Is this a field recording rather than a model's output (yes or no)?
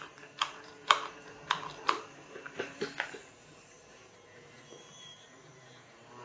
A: no